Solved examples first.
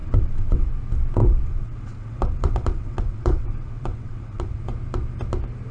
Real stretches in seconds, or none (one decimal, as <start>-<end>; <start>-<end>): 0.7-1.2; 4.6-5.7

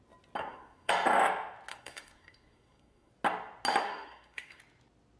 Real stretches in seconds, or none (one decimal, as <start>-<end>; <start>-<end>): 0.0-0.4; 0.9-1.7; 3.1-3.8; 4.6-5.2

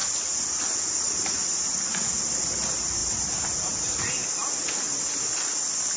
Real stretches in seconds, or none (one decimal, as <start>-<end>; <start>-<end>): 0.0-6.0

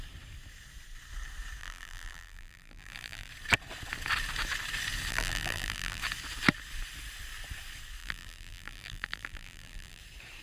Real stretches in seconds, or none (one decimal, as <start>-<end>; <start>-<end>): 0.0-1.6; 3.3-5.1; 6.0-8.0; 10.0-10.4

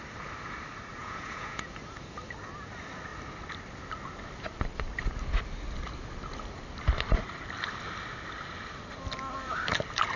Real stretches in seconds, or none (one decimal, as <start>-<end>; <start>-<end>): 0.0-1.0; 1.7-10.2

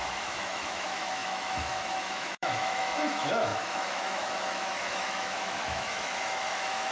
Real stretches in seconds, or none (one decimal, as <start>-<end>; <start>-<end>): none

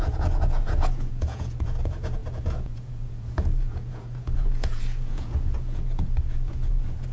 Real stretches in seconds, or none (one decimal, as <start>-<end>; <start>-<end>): none

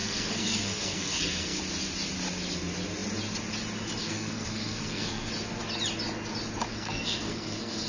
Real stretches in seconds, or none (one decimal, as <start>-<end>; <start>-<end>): 1.6-4.0; 5.3-6.7